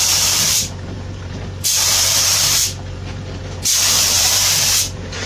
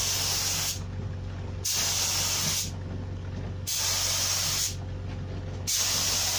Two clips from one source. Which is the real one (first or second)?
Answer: second